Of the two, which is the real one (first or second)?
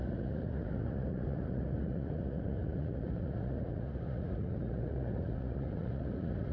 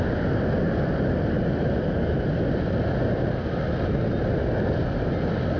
second